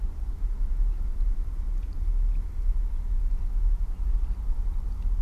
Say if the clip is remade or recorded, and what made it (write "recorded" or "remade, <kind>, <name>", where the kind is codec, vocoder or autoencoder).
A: recorded